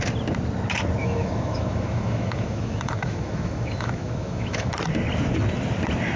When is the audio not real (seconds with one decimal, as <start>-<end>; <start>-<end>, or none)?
1.0-4.7